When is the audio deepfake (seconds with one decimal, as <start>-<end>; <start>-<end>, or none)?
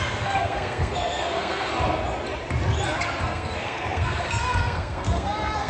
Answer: 0.0-1.7; 3.2-5.7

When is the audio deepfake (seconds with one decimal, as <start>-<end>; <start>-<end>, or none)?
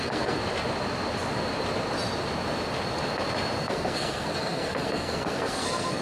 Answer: 0.0-0.4; 3.6-6.0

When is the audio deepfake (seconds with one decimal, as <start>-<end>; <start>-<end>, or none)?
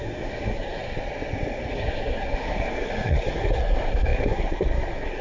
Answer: 0.0-0.8; 1.7-5.2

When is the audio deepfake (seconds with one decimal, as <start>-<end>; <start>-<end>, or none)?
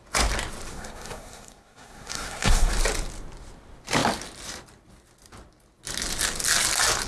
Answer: 0.7-2.7